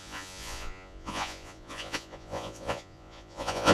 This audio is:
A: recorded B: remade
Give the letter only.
B